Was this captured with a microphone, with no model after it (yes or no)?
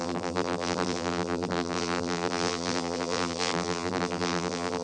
no